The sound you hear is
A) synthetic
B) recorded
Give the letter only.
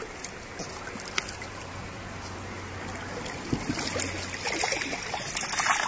B